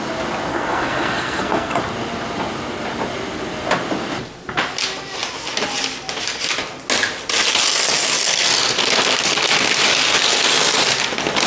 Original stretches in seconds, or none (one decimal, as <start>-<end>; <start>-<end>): 0.0-0.5; 1.8-11.5